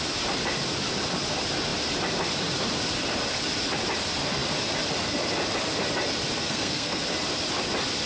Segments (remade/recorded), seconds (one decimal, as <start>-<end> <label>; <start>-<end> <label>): 0.0-6.4 recorded; 6.4-7.0 remade; 7.0-8.1 recorded